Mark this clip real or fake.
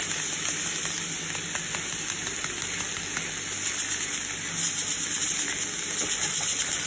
real